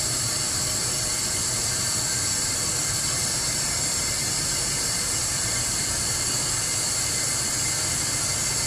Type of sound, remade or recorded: remade